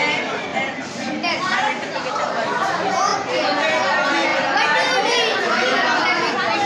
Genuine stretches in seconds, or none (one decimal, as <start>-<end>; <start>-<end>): 0.0-0.5; 2.7-6.7